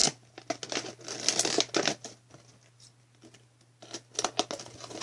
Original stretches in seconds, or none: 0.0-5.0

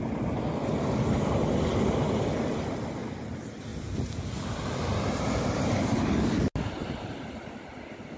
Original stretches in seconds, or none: 0.0-8.2

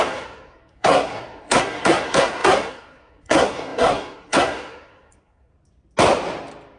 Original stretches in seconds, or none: 5.5-6.8